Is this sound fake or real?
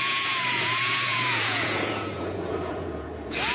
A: fake